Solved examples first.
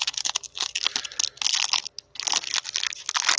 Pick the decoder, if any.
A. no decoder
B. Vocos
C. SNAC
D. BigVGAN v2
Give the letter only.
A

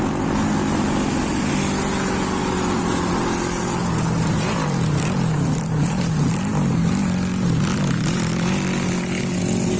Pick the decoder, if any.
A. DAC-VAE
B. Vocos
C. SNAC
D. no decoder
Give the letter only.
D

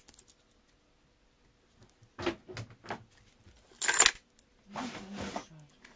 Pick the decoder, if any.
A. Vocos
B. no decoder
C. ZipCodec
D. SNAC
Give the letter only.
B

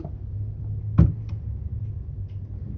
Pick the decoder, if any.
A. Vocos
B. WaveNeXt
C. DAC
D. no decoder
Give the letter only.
D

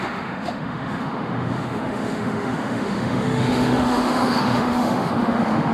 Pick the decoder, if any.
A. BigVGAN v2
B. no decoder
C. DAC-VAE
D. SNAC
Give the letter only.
C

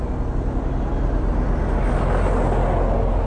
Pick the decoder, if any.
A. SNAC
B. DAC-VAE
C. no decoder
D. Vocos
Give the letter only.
C